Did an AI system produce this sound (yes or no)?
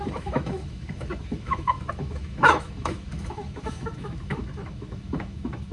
yes